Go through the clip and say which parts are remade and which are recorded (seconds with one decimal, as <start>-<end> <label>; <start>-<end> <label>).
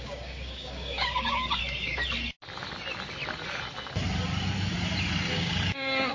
0.0-1.6 remade; 1.6-5.3 recorded; 5.3-6.1 remade